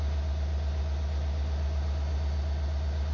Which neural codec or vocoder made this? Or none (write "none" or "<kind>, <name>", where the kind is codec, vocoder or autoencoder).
none